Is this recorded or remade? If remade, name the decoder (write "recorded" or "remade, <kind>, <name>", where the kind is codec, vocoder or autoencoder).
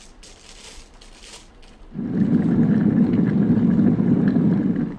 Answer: recorded